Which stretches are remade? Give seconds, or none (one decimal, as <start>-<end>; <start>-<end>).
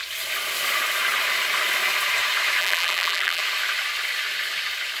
2.6-3.4